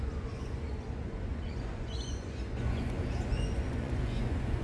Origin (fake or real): fake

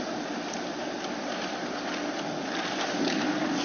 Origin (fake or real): real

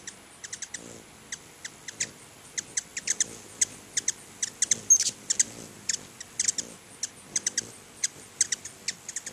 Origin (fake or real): real